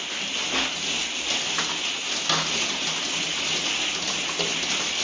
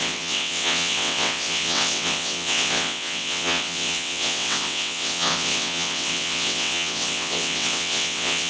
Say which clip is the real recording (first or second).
first